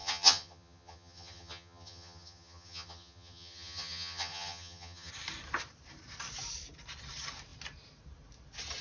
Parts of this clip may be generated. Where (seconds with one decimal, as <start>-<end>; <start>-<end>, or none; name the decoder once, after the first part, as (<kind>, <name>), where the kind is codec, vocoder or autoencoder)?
0.0-5.1 (vocoder, HiFi-GAN)